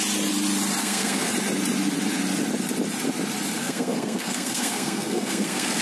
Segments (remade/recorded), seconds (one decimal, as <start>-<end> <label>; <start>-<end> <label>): 0.0-0.8 recorded; 0.8-1.3 remade; 1.3-3.6 recorded; 3.6-5.8 remade